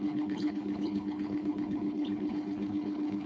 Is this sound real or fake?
fake